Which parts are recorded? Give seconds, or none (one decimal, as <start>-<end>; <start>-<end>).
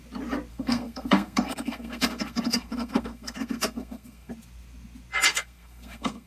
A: 0.0-0.5; 4.3-5.3